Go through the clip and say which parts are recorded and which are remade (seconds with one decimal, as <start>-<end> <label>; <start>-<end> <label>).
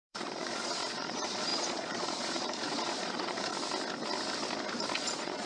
0.0-3.5 remade; 3.5-5.0 recorded; 5.0-5.5 remade